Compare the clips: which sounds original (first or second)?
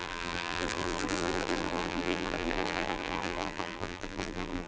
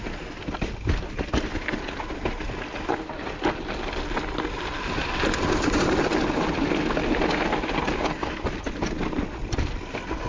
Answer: second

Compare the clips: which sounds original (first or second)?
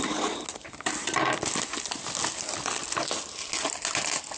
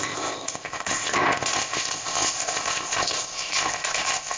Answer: first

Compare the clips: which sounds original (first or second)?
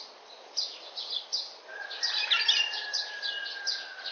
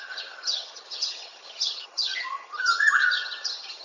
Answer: first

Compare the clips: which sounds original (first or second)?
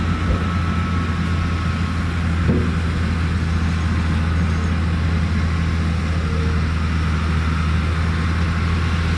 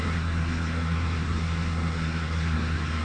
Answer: first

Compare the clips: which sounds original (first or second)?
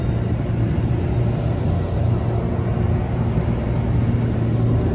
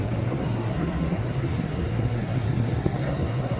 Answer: first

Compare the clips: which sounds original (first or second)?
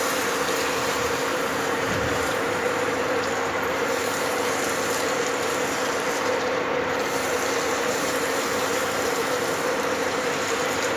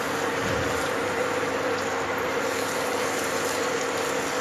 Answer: second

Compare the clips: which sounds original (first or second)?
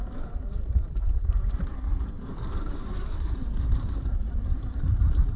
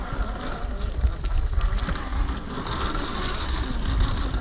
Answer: second